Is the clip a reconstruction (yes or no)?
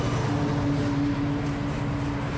no